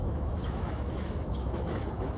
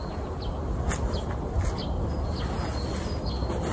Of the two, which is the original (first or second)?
second